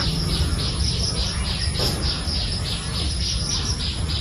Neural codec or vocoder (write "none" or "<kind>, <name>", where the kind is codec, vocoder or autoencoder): none